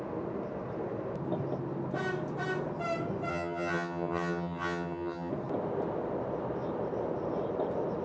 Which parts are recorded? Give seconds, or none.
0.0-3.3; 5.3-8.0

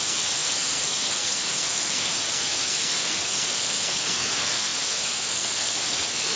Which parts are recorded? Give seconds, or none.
none

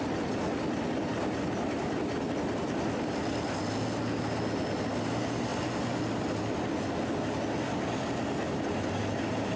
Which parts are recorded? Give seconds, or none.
0.0-9.6

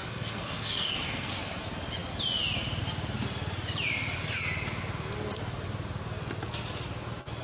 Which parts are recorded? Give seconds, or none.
1.3-7.4

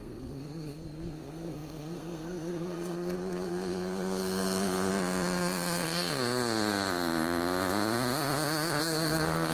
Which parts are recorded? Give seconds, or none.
4.9-8.8

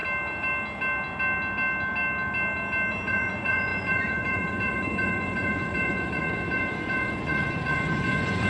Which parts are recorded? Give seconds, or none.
0.0-2.9

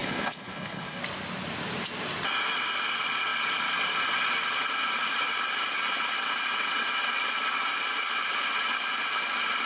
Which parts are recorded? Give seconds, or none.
1.0-9.7

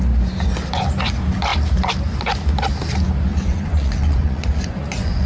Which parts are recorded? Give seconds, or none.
0.0-3.3